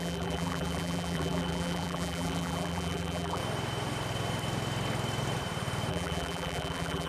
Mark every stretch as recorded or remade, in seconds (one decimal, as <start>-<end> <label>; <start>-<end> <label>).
0.0-3.4 remade; 3.4-5.9 recorded; 5.9-7.1 remade